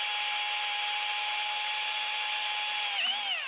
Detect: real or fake real